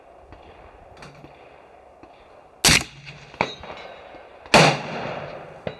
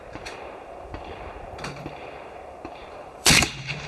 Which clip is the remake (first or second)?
second